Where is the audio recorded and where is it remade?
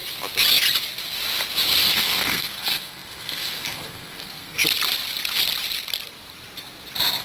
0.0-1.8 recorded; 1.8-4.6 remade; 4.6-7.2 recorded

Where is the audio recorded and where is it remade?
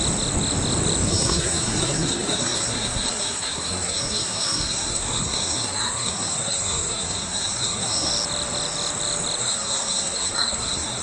0.0-1.1 recorded; 1.1-8.1 remade; 8.1-9.4 recorded; 9.4-11.0 remade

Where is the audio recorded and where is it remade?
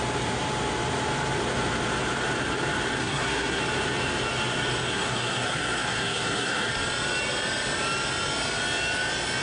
0.0-3.0 recorded; 3.0-3.6 remade; 3.6-4.9 recorded; 4.9-6.7 remade; 6.7-9.4 recorded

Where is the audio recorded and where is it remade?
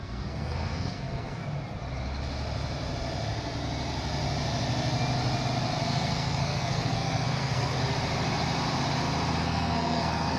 0.0-1.4 remade; 1.4-5.8 recorded; 5.8-7.8 remade; 7.8-9.4 recorded; 9.4-10.4 remade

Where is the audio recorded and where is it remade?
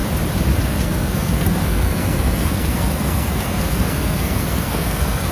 0.0-0.7 recorded; 0.7-5.3 remade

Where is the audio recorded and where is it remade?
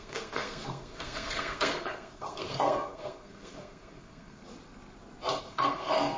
0.0-4.4 remade; 4.4-5.4 recorded; 5.4-6.2 remade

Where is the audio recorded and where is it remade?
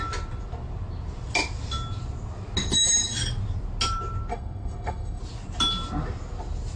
0.0-4.3 recorded; 4.3-5.2 remade; 5.2-6.8 recorded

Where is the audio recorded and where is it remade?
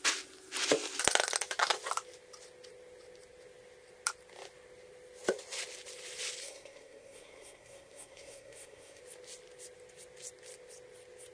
0.0-6.4 recorded; 6.4-9.0 remade; 9.0-11.3 recorded